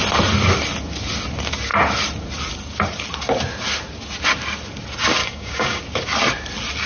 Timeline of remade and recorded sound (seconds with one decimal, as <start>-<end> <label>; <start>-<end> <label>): 0.0-5.2 recorded; 5.2-5.8 remade; 5.8-6.9 recorded